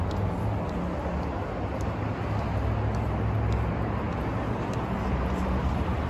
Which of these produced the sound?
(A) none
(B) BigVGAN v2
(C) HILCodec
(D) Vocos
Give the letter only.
A